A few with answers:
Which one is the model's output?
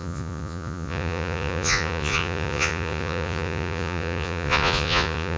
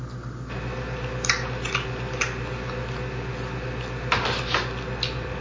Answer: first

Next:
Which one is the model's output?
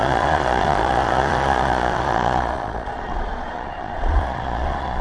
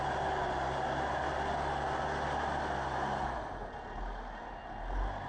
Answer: first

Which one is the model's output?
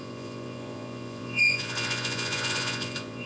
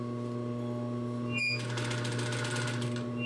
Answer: first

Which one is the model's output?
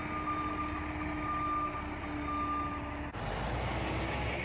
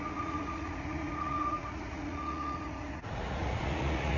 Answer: second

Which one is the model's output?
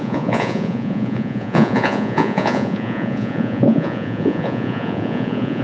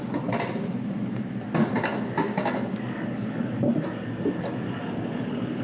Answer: first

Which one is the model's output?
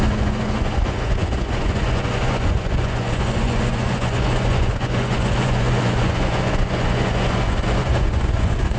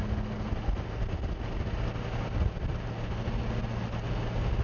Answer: first